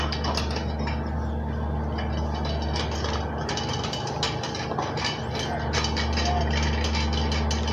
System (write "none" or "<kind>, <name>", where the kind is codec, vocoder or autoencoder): none